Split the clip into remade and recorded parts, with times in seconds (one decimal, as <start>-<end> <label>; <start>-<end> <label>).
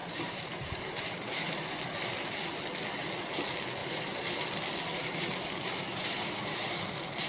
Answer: 0.0-1.7 remade; 1.7-3.8 recorded; 3.8-4.4 remade; 4.4-4.9 recorded; 4.9-6.7 remade; 6.7-7.3 recorded